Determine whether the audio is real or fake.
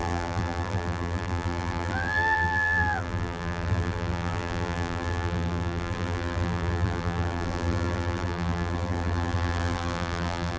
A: fake